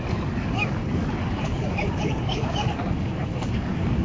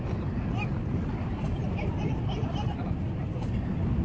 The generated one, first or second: first